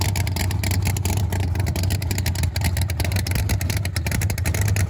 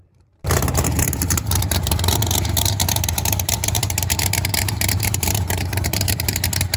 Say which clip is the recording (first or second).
first